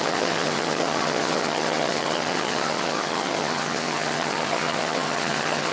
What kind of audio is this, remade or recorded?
remade